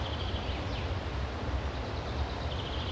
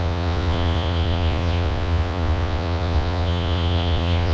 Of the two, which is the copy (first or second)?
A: second